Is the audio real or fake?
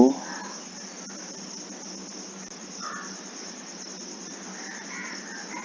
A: real